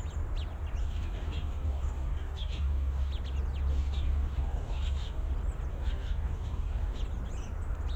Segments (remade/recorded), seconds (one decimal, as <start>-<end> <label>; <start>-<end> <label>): 0.0-0.8 recorded; 0.8-3.1 remade; 3.1-3.7 recorded; 3.7-5.3 remade; 5.3-5.7 recorded; 5.7-7.0 remade; 7.0-8.0 recorded